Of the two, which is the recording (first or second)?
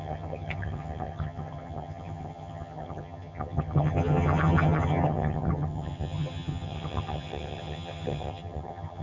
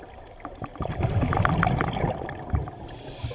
second